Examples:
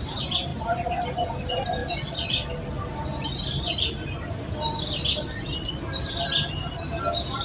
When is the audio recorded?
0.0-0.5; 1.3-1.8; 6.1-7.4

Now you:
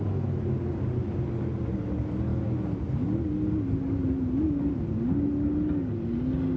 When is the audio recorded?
0.0-6.6

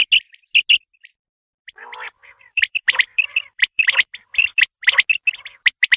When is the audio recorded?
0.0-2.4; 4.5-6.0